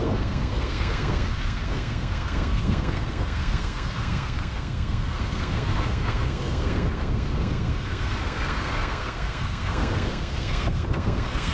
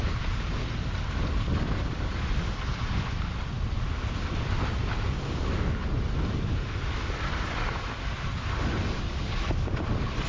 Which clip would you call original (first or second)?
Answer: second